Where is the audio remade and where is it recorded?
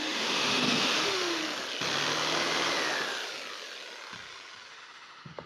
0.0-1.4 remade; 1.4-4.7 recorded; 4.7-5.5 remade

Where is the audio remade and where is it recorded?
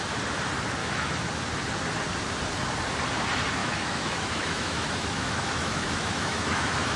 0.0-0.8 recorded; 0.8-1.3 remade; 1.3-3.6 recorded; 3.6-7.0 remade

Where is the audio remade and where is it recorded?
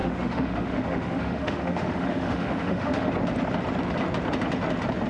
0.0-3.1 remade; 3.1-5.1 recorded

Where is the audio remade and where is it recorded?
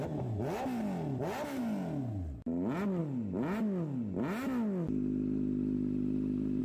0.0-6.6 recorded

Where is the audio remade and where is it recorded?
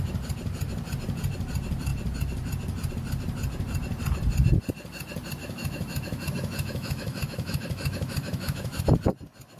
0.0-5.4 recorded; 5.4-8.8 remade; 8.8-9.6 recorded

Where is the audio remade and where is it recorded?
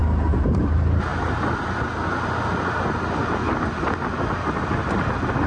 0.0-5.5 recorded